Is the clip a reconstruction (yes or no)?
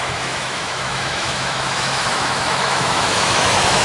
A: yes